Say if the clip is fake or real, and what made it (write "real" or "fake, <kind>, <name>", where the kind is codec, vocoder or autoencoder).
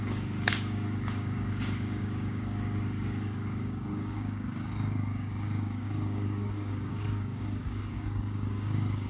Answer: fake, codec, DAC